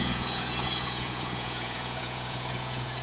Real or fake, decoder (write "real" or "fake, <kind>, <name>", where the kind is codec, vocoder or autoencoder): fake, vocoder, Vocos